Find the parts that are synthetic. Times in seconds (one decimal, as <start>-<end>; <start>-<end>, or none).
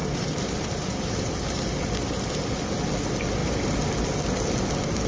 0.0-2.4; 3.4-3.9